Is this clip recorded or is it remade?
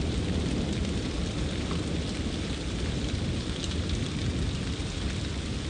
recorded